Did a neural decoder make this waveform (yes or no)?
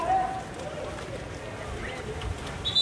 no